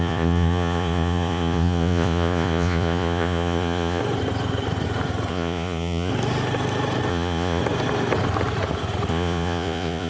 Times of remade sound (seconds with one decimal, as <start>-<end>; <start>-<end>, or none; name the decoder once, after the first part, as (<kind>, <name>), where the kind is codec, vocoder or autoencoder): 0.0-4.0 (vocoder, Vocos); 5.3-6.1; 7.1-7.6; 9.1-10.1